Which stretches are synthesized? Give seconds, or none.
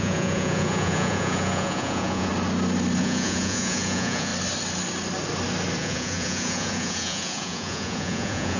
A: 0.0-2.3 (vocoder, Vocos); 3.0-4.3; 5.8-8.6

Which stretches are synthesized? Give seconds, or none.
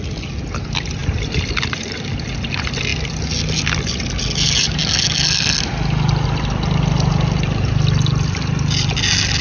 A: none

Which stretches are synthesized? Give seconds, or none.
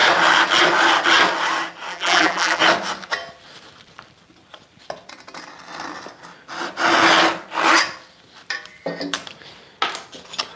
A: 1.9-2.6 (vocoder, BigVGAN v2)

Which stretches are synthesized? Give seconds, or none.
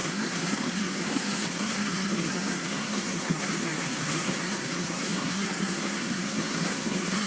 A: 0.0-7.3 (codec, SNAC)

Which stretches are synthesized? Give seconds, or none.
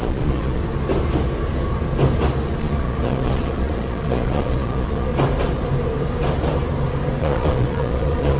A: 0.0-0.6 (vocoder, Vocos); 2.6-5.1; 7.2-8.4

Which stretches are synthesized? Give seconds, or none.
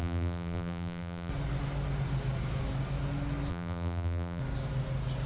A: 0.0-1.3 (vocoder, BigVGAN v2); 3.5-4.4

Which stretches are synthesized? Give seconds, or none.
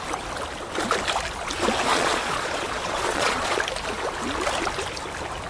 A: 1.9-3.6 (vocoder, Vocos)